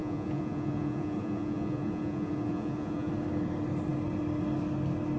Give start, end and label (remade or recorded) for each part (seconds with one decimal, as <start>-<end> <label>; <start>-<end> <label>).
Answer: 0.0-3.1 remade; 3.1-5.2 recorded